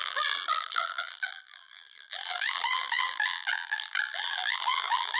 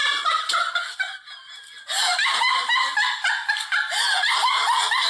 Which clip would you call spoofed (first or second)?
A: first